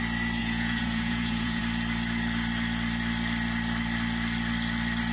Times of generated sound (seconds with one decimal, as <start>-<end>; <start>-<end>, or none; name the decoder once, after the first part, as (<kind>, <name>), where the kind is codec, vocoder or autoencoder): 0.4-1.6 (vocoder, Vocos)